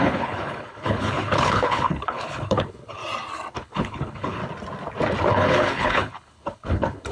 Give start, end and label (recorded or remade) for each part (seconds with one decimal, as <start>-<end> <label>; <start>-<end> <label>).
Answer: 0.0-3.0 remade; 3.0-3.6 recorded; 3.6-4.4 remade; 4.4-5.3 recorded; 5.3-7.1 remade